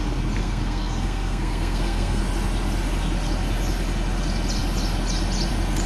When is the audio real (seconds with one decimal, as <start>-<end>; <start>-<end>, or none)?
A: 0.0-0.4; 2.2-5.9